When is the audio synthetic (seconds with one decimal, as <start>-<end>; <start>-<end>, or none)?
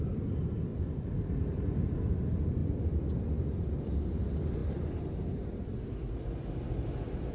0.7-1.7; 6.0-6.7